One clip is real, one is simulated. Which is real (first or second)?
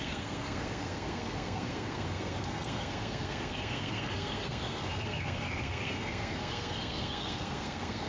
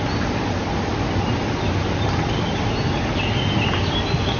second